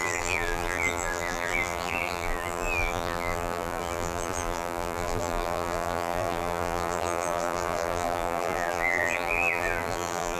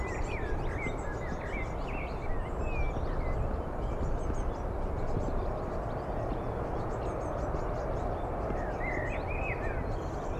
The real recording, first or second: second